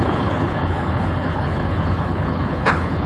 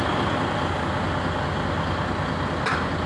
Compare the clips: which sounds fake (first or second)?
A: first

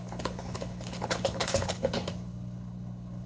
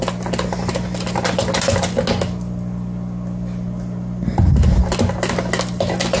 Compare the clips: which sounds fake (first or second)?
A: first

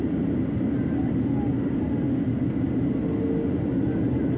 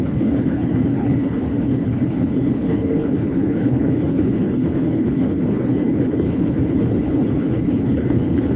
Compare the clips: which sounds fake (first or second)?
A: second